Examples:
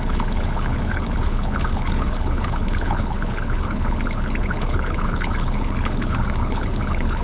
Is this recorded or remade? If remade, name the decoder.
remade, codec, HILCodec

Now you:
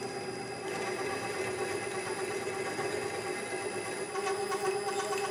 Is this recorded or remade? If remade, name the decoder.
recorded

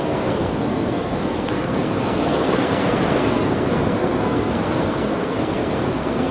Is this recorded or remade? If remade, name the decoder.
remade, codec, SNAC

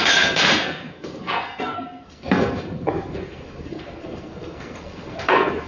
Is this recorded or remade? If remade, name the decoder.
remade, codec, SNAC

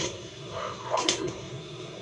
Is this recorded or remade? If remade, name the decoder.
remade, codec, SNAC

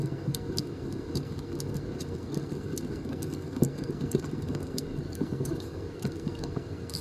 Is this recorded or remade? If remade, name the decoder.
remade, codec, SNAC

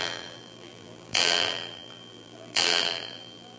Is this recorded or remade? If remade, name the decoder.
remade, vocoder, BigVGAN v2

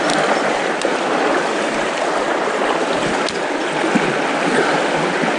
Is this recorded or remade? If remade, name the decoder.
recorded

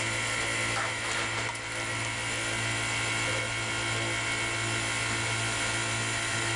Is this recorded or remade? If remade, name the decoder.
recorded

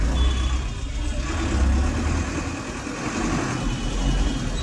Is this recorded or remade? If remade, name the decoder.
recorded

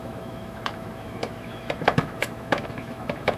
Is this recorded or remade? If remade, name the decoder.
remade, autoencoder, DAC-VAE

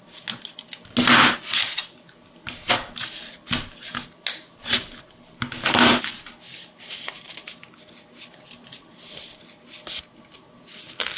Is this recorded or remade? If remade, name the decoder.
recorded